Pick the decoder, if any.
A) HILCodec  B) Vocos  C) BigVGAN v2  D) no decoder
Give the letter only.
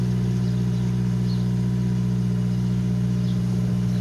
D